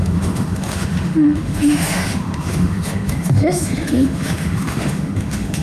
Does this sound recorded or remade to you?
remade